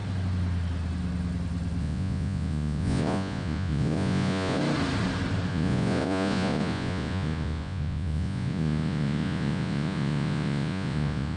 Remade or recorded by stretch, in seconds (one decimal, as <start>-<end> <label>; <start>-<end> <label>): 0.0-1.8 recorded; 1.8-4.6 remade; 4.6-5.5 recorded; 5.5-11.4 remade